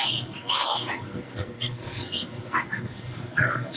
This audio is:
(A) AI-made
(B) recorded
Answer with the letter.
A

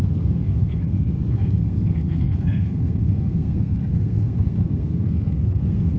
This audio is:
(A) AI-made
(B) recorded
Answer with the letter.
A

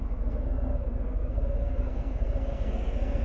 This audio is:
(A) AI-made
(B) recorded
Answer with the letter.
A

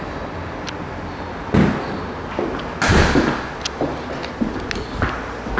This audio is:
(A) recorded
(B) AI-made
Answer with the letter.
A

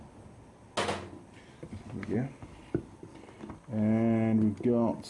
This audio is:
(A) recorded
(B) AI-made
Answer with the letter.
A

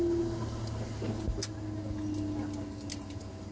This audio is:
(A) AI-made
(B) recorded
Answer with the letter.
B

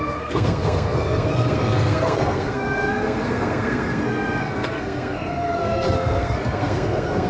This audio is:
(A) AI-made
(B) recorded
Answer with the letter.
A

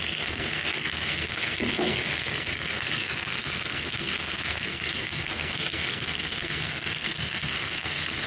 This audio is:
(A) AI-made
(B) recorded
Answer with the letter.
A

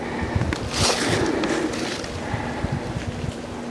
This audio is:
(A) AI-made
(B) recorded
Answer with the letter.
B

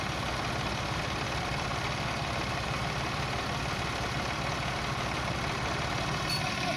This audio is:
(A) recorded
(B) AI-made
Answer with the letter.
A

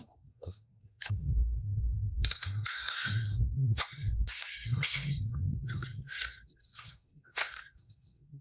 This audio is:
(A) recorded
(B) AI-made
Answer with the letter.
B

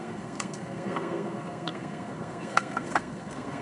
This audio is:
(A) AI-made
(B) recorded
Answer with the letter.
A